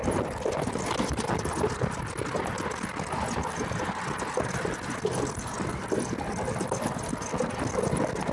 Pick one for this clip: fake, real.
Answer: real